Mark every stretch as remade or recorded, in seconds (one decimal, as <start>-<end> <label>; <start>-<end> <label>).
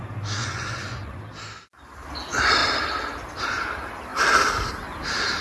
0.0-0.4 recorded; 0.4-1.2 remade; 1.2-5.4 recorded